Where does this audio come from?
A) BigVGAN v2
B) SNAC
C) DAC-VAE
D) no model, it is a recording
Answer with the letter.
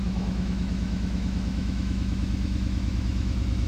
C